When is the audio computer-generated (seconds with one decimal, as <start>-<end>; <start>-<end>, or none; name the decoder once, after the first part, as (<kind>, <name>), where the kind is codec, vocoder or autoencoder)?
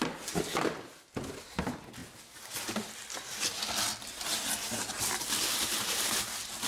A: 5.6-6.7 (vocoder, BigVGAN v2)